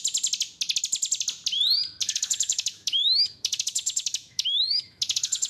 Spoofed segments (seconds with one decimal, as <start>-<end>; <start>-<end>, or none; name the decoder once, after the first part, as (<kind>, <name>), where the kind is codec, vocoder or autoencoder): 2.0-5.5 (autoencoder, DAC-VAE)